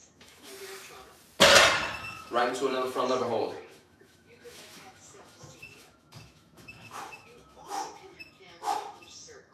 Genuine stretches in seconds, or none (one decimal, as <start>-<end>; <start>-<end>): 0.5-2.0